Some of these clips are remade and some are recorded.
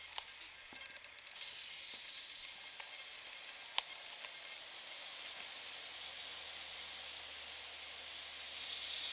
recorded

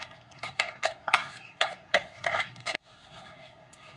remade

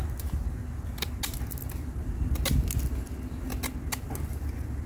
recorded